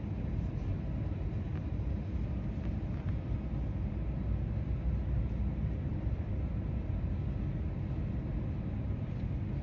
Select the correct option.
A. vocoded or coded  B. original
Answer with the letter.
B